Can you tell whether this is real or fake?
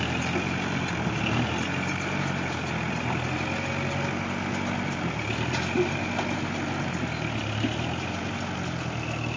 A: real